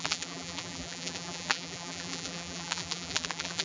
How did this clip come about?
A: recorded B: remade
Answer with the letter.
B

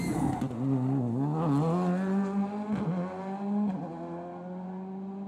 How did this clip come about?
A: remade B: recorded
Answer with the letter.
B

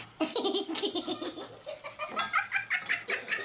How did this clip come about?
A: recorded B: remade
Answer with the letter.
A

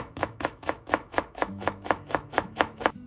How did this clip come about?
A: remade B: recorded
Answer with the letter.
A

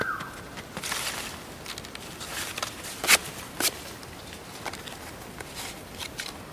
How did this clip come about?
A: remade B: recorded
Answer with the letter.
B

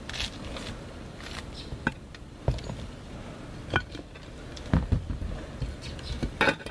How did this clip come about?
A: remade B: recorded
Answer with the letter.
B